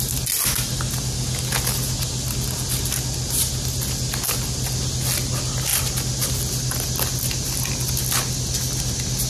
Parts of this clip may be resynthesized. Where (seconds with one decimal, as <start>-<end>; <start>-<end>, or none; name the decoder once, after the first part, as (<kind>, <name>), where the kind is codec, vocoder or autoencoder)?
none